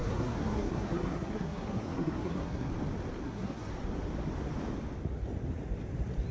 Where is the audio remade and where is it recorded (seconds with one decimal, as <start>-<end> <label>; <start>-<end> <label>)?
0.0-2.7 remade; 2.7-3.2 recorded; 3.2-3.7 remade; 3.7-6.3 recorded